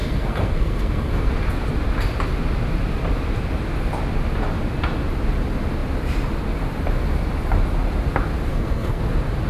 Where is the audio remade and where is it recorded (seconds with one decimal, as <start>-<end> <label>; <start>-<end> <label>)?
0.0-1.3 remade; 1.3-8.5 recorded; 8.5-9.0 remade; 9.0-9.5 recorded